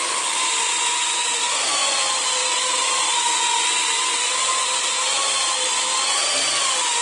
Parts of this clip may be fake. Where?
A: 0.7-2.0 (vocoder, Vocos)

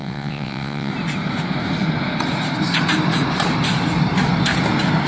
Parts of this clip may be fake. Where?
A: 0.0-0.9 (vocoder, WaveNeXt)